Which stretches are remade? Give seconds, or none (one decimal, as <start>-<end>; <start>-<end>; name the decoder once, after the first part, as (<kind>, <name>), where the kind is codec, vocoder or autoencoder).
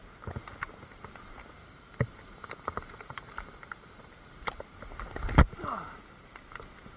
1.6-4.6 (vocoder, BigVGAN v2)